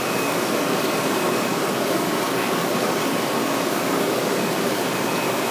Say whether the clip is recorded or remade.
remade